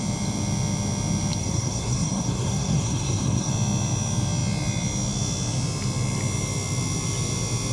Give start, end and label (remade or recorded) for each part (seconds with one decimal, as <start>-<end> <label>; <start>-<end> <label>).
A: 0.0-1.4 recorded; 1.4-3.5 remade; 3.5-7.7 recorded